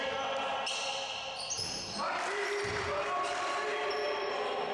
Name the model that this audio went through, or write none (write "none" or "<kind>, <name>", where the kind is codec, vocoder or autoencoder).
none